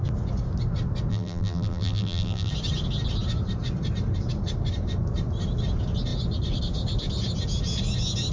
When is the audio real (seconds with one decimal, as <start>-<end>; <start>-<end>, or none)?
0.0-1.1; 2.5-8.3